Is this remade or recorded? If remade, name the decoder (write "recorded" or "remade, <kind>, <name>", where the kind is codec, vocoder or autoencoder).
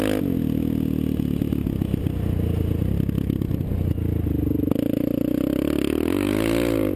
recorded